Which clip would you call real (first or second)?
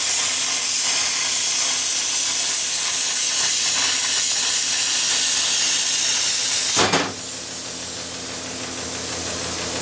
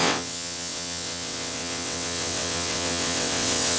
first